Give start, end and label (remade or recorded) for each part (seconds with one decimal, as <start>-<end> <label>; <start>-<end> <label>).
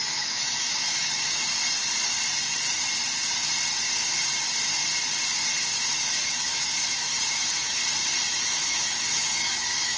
0.0-1.5 remade; 1.5-5.6 recorded; 5.6-7.8 remade; 7.8-8.4 recorded; 8.4-10.0 remade